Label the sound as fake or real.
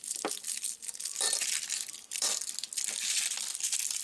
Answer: real